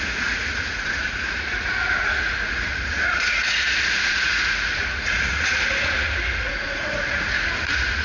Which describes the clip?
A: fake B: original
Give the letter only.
A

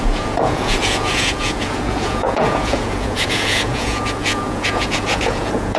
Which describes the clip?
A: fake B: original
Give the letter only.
A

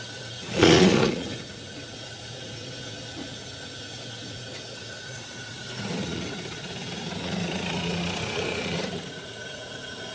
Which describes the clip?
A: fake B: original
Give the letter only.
A